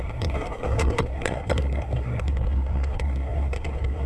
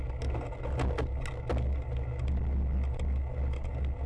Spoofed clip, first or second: first